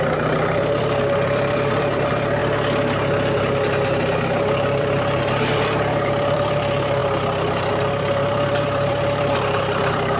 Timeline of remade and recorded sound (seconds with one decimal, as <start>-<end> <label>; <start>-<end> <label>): 0.0-2.4 remade; 2.4-4.8 recorded; 4.8-7.0 remade; 7.0-7.7 recorded; 7.7-10.2 remade